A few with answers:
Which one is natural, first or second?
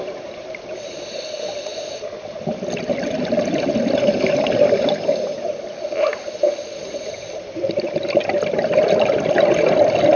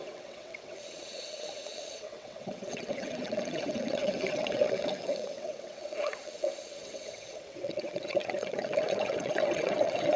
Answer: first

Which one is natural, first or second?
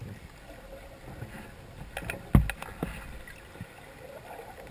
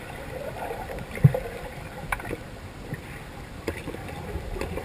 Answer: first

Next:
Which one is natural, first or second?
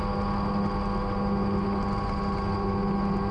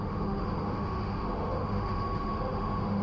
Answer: first